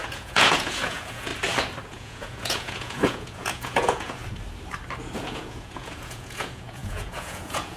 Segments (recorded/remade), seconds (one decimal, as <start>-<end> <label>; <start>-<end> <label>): 0.0-1.3 remade; 1.3-1.8 recorded; 1.8-4.2 remade; 4.2-5.3 recorded; 5.3-7.8 remade